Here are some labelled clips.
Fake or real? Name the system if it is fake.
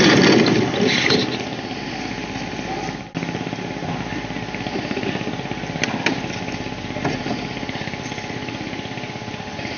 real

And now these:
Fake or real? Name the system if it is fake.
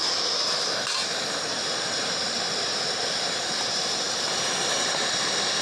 real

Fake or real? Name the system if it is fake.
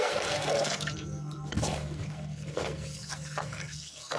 fake, codec, SNAC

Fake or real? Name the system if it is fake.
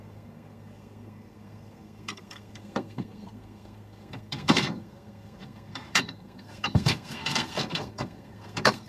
fake, codec, SNAC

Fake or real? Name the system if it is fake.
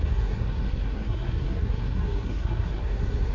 fake, codec, SNAC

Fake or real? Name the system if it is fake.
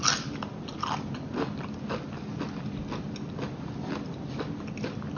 real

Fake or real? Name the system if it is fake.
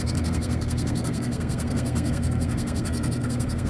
fake, codec, SNAC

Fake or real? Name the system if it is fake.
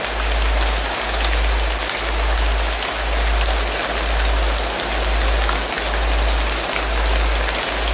real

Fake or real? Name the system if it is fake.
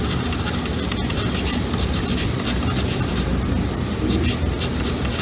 real